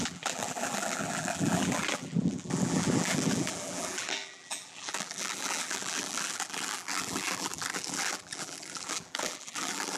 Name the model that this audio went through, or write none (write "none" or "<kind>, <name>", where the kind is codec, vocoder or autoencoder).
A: vocoder, BigVGAN v2